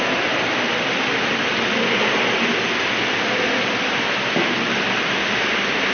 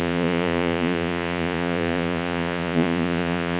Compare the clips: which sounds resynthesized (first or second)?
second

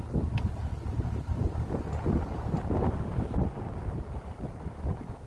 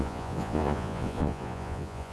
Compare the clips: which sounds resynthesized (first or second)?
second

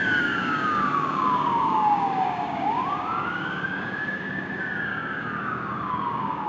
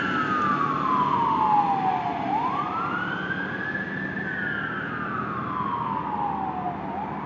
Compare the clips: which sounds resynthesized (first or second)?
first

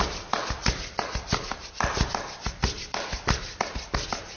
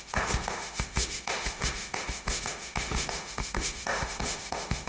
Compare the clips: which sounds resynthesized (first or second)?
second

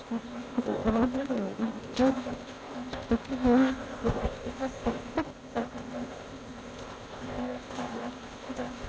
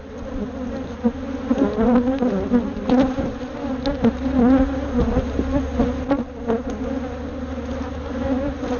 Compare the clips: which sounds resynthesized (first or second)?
first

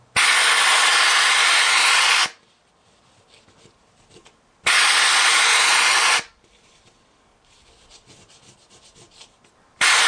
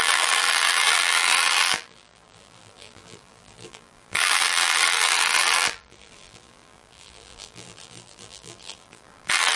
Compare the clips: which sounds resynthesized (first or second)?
second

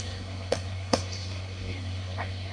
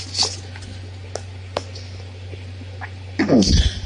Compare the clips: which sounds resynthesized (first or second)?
first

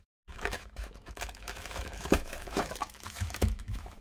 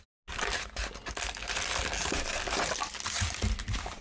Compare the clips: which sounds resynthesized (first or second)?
first